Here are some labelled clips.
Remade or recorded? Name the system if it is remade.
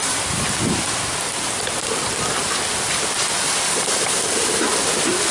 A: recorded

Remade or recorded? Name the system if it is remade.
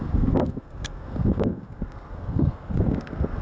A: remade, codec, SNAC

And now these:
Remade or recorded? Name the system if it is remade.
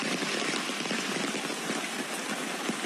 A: recorded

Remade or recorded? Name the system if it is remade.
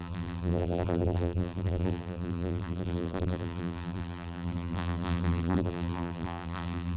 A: remade, vocoder, BigVGAN v2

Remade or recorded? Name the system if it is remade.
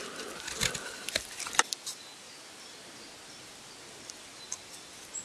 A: recorded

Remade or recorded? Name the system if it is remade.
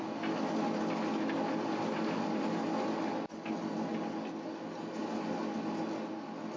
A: recorded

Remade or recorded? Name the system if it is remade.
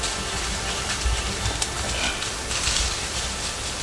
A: recorded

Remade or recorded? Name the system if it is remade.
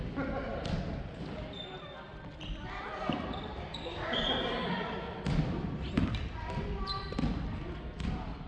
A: remade, vocoder, BigVGAN v2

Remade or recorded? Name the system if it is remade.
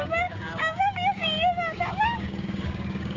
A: remade, codec, DAC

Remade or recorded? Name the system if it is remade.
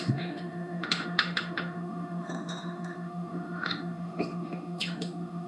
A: remade, autoencoder, DAC-VAE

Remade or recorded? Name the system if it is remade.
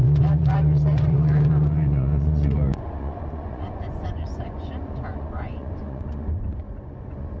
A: remade, vocoder, Vocos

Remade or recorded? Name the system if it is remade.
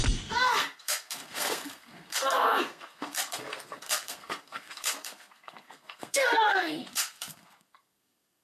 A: remade, codec, SNAC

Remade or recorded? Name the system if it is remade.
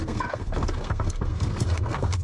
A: remade, codec, SNAC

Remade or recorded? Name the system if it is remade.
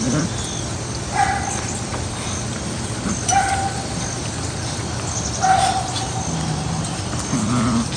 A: recorded